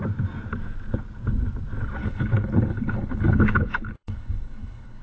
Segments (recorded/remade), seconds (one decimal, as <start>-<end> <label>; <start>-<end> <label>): 0.0-2.0 recorded; 2.0-5.0 remade